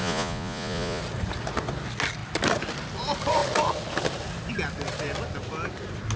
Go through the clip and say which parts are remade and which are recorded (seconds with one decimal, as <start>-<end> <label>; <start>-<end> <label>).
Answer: 0.0-1.0 remade; 1.0-6.2 recorded